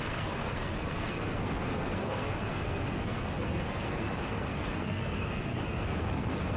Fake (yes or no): yes